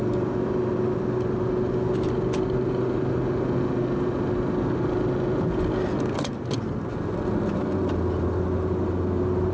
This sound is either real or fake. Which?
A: real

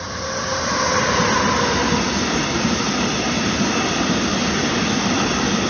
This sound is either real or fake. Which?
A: real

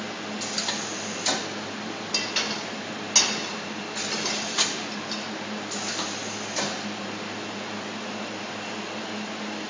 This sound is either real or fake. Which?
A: real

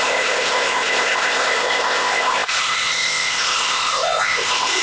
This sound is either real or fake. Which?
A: fake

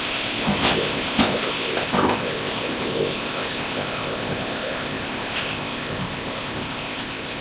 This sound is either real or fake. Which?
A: fake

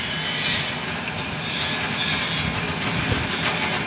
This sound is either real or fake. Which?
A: real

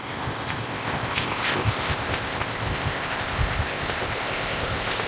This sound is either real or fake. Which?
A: fake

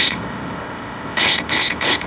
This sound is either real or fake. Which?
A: fake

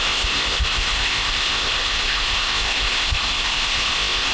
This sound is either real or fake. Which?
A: fake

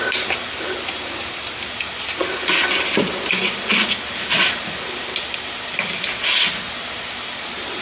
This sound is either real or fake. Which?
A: real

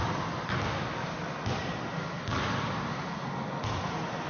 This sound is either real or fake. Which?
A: real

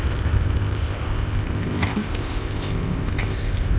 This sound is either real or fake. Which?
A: fake